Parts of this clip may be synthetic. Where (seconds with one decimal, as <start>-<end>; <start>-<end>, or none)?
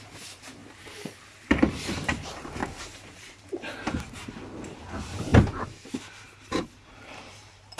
0.0-0.6; 1.7-2.6; 3.2-5.3; 5.9-7.8